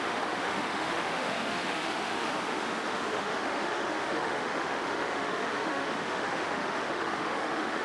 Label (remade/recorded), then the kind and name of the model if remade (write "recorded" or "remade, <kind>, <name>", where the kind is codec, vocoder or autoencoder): remade, autoencoder, DAC-VAE